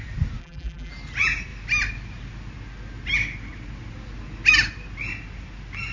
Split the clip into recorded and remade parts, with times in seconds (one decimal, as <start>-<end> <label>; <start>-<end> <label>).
0.0-0.4 recorded; 0.4-0.9 remade; 0.9-5.9 recorded